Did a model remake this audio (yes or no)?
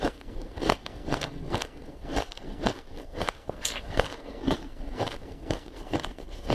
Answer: yes